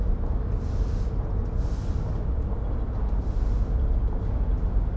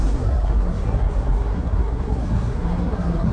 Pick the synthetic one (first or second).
second